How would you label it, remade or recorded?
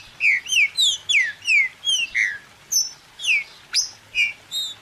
recorded